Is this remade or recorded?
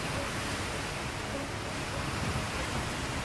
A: recorded